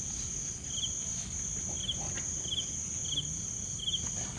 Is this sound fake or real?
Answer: real